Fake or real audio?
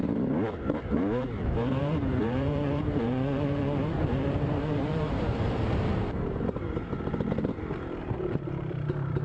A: fake